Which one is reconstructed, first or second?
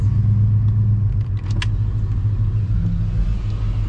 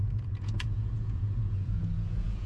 second